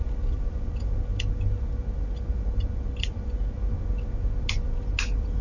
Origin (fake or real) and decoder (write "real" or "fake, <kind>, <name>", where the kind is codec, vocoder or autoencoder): real